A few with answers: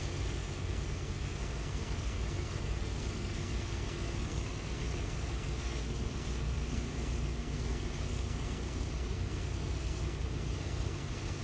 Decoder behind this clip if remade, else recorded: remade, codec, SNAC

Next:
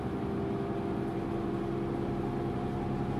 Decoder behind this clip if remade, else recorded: recorded